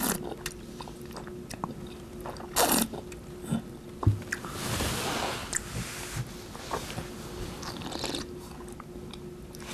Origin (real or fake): real